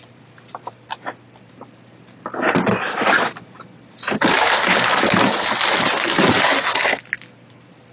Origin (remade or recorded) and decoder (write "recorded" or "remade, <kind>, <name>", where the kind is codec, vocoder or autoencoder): recorded